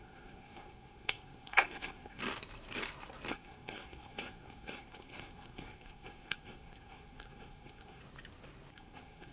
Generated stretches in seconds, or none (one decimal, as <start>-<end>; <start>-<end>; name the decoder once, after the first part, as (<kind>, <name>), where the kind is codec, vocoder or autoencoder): 0.0-2.2 (codec, SNAC); 3.3-8.0; 8.7-9.3